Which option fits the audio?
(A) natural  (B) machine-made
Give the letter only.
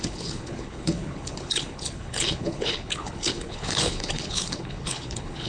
B